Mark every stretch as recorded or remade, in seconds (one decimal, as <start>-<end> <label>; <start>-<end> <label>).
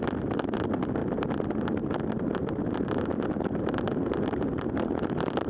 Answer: 0.0-1.0 recorded; 1.0-3.9 remade; 3.9-5.5 recorded